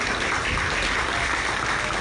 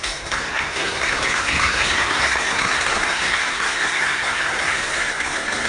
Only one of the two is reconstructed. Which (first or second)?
second